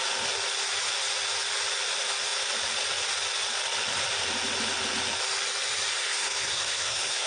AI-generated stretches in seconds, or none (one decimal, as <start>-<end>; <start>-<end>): 5.9-7.3